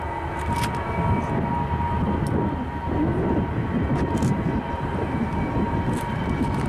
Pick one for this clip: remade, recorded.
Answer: recorded